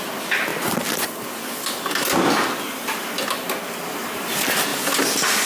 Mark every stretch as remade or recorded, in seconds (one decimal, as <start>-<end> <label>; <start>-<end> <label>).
0.0-5.5 recorded